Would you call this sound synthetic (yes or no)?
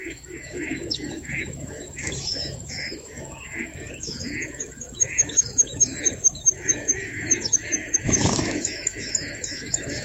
yes